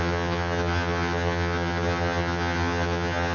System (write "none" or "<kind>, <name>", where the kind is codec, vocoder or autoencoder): vocoder, HiFi-GAN